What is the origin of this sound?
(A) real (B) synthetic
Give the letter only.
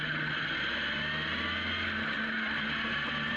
A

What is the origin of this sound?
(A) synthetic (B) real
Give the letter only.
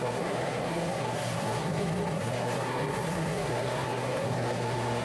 A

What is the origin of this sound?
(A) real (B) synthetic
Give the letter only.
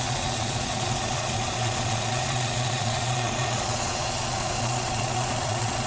B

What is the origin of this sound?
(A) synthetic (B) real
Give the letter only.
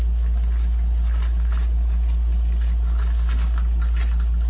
B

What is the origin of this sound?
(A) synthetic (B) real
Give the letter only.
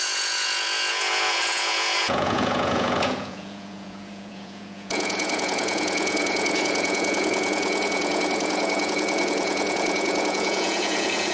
A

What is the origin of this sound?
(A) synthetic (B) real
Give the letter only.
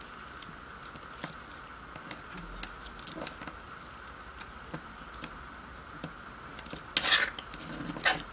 B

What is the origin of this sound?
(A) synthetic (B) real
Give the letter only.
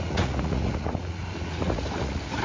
A